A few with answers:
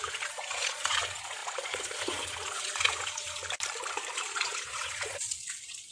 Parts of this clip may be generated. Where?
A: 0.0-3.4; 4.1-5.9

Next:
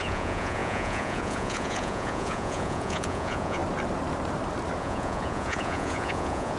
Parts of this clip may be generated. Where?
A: 0.0-3.6; 4.8-6.6

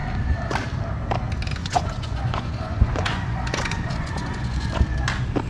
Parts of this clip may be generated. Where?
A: 1.6-4.8